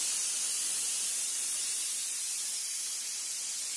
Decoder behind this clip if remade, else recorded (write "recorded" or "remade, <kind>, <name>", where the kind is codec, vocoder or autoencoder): recorded